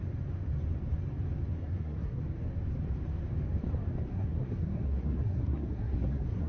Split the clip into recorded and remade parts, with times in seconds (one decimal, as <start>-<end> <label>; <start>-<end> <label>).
0.0-1.6 recorded; 1.6-2.2 remade; 2.2-4.1 recorded; 4.1-6.5 remade